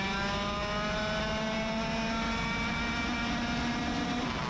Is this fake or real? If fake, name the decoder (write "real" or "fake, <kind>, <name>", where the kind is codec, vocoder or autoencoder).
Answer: real